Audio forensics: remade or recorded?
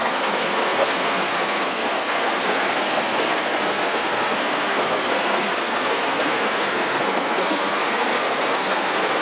remade